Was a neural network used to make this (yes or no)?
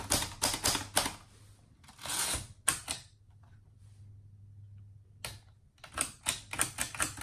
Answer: no